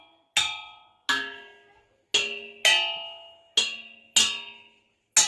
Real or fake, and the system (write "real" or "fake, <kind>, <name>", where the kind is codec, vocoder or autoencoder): real